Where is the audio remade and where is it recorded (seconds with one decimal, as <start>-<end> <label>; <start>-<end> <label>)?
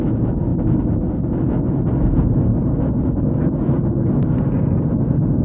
0.0-0.5 recorded; 0.5-1.4 remade; 1.4-2.5 recorded; 2.5-3.9 remade; 3.9-5.4 recorded